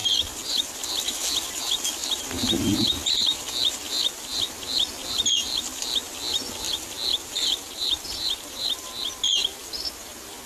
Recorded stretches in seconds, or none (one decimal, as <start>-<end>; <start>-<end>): 0.0-7.1; 8.9-10.5